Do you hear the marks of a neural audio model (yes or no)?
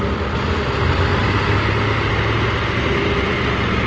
no